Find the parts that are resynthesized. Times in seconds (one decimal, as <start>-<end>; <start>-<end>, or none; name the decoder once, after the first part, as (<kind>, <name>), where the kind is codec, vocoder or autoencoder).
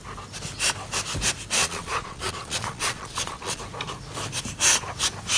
1.6-3.6 (vocoder, Vocos)